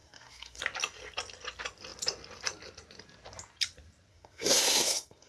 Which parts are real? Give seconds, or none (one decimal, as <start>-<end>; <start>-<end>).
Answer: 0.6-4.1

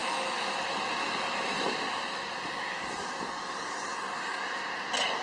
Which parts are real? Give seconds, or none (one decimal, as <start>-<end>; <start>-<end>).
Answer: 3.1-3.9; 4.6-5.2

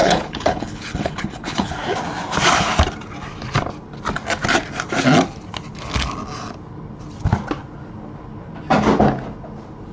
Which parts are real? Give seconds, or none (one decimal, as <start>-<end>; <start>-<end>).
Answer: 1.7-9.9

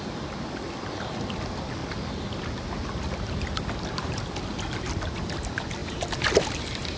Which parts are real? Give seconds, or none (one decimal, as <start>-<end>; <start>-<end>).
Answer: 0.0-7.0

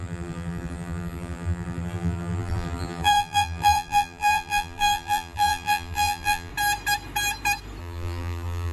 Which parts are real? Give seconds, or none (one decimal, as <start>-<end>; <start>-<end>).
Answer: 6.5-7.8

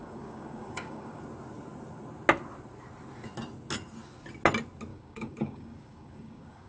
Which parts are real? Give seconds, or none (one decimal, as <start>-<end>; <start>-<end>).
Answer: 1.2-4.9

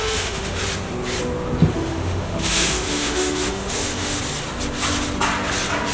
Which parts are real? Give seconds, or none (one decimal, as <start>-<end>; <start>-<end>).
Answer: 0.6-1.9; 4.2-5.9

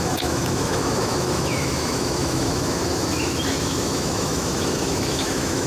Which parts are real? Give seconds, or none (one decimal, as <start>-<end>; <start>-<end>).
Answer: none